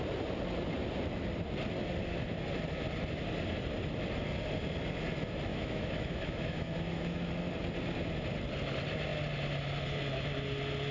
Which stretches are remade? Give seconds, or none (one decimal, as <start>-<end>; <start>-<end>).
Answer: 5.5-7.3